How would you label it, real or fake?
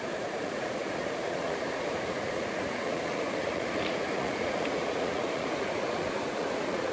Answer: fake